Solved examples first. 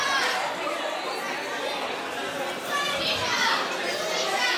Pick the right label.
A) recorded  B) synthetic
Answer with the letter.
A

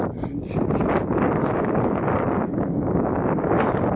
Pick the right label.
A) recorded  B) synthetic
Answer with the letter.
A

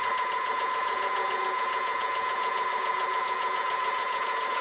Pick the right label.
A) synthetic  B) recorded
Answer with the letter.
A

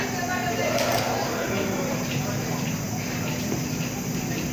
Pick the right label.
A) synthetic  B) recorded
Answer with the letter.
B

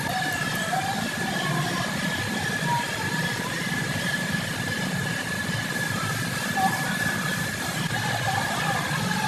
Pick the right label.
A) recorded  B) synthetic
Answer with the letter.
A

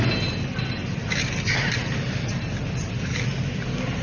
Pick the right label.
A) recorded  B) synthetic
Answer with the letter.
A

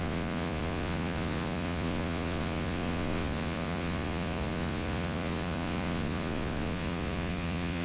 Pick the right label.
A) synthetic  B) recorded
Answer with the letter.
A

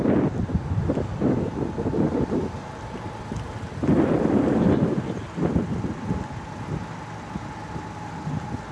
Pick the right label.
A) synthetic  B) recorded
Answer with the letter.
B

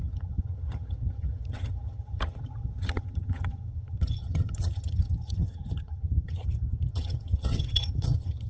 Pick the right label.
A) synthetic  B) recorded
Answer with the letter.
A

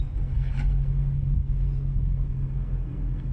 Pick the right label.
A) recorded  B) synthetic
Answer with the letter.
B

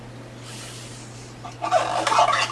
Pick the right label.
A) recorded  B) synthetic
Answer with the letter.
A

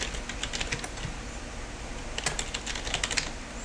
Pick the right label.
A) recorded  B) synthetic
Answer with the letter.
A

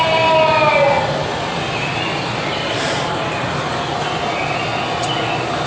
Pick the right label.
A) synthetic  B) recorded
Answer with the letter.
B